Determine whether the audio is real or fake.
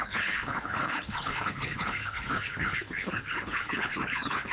fake